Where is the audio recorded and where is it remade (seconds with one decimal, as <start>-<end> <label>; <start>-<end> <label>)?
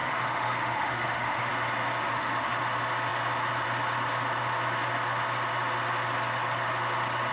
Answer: 0.0-1.5 remade; 1.5-2.0 recorded; 2.0-2.6 remade; 2.6-7.3 recorded